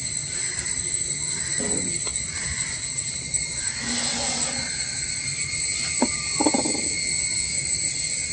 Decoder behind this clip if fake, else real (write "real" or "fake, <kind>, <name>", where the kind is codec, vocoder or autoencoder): real